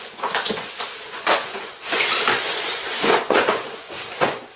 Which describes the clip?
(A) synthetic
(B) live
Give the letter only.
A